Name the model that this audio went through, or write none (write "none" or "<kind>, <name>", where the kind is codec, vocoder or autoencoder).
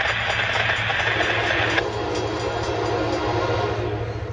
none